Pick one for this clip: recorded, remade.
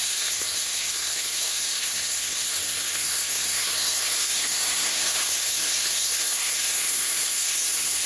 remade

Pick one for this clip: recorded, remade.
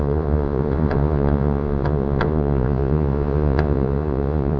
remade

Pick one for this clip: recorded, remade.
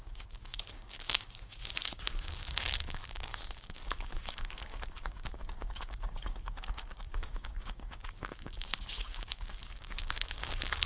remade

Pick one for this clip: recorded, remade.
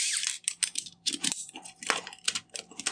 remade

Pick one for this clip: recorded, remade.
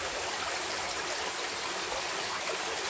recorded